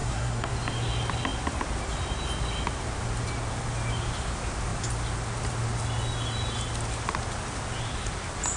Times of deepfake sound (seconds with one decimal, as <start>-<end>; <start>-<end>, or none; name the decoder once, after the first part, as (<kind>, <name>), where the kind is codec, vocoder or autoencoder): 0.0-0.5 (codec, SNAC)